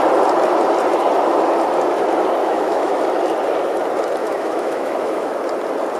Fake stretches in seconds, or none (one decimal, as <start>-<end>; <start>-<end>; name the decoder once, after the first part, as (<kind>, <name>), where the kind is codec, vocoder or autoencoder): 2.4-3.0 (autoencoder, DAC-VAE); 4.2-5.3